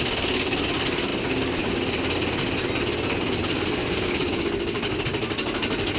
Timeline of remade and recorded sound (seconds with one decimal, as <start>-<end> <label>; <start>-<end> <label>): 0.0-3.8 recorded; 3.8-5.0 remade; 5.0-6.0 recorded